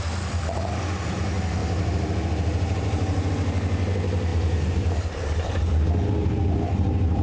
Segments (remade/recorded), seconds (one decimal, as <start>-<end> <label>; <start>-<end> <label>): 0.0-1.6 recorded; 1.6-3.3 remade; 3.3-4.3 recorded; 4.3-5.0 remade; 5.0-7.2 recorded